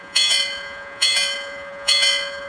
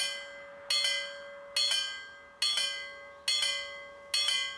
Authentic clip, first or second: second